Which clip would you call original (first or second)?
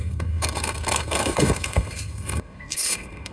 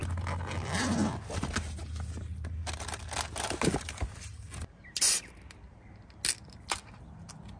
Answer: second